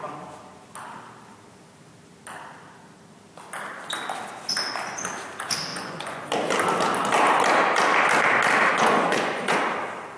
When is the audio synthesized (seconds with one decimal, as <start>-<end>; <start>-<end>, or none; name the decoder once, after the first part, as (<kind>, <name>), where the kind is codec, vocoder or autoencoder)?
5.7-6.2 (vocoder, Vocos); 8.7-9.6